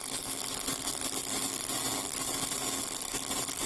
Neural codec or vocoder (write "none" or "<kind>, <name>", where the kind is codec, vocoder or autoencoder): none